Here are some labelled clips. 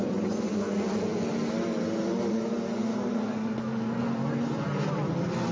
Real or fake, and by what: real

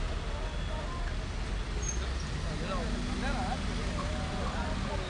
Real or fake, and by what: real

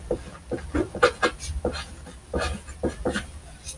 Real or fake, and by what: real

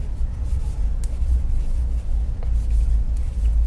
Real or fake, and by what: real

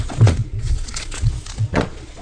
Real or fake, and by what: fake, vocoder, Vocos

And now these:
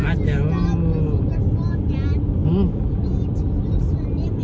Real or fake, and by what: real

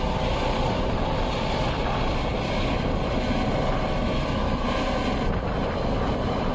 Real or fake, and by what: real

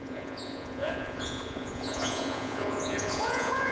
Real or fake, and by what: fake, vocoder, Vocos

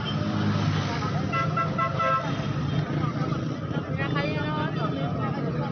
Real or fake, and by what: real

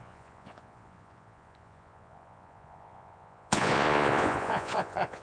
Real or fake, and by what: fake, vocoder, Vocos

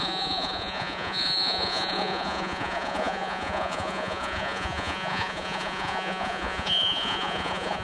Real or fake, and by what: fake, vocoder, Vocos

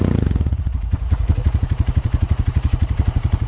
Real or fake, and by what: fake, vocoder, Vocos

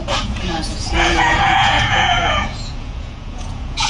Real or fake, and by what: fake, vocoder, Vocos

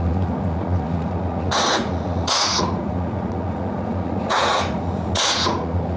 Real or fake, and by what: fake, vocoder, Vocos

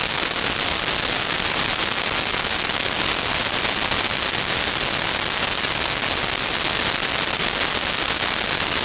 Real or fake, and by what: real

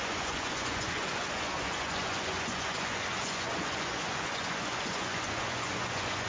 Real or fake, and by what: fake, vocoder, Vocos